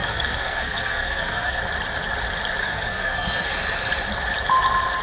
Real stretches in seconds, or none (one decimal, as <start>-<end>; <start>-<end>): 1.6-2.6; 3.5-5.0